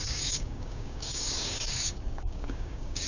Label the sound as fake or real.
fake